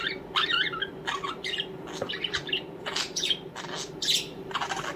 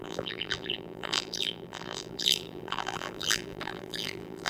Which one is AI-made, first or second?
second